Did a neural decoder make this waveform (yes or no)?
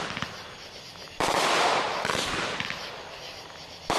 yes